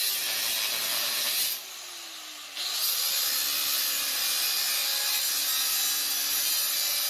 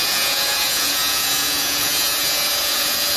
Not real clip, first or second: second